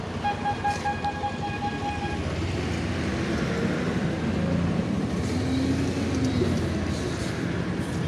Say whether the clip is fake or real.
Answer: real